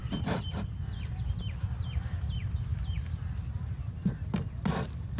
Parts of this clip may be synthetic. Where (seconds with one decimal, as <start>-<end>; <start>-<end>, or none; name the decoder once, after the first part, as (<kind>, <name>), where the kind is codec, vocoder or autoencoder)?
0.0-0.7 (vocoder, BigVGAN v2)